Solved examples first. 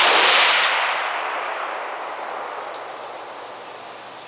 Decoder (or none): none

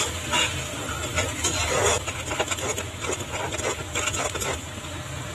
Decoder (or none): none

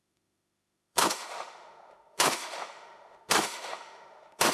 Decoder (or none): autoencoder, DAC-VAE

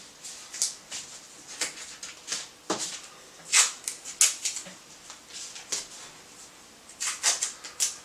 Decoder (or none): none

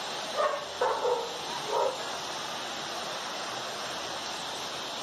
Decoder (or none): none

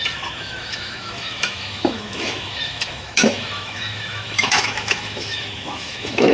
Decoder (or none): autoencoder, DAC-VAE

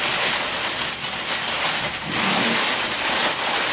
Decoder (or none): none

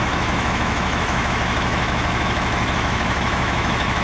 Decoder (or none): autoencoder, DAC-VAE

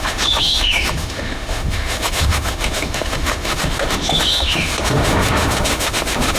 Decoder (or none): autoencoder, DAC-VAE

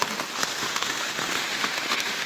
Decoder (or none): autoencoder, DAC-VAE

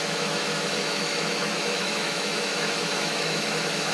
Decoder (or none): autoencoder, DAC-VAE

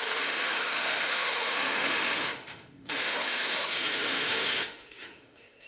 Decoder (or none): autoencoder, DAC-VAE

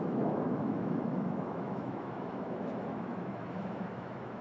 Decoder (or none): autoencoder, DAC-VAE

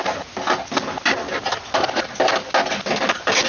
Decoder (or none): none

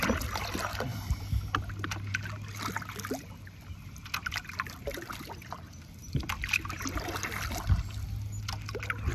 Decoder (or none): none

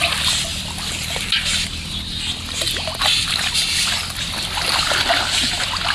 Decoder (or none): none